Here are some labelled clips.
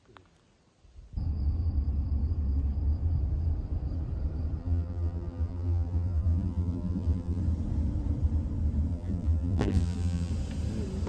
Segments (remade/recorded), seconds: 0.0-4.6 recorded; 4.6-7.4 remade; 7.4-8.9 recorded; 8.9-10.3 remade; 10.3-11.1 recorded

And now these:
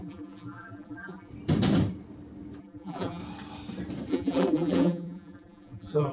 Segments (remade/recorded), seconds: 0.0-1.3 remade; 1.3-2.6 recorded; 2.6-3.2 remade; 3.2-4.1 recorded; 4.1-6.1 remade

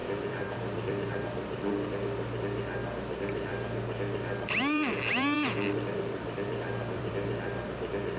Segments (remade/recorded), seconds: 0.0-1.1 remade; 1.1-3.3 recorded; 3.3-7.6 remade; 7.6-8.2 recorded